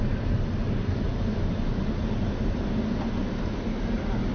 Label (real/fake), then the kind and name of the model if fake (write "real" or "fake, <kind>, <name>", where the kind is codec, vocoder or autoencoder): real